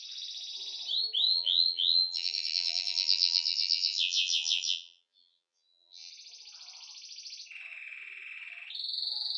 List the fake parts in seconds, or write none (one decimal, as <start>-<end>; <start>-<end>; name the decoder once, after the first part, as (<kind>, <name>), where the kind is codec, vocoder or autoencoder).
1.3-6.1 (vocoder, BigVGAN v2)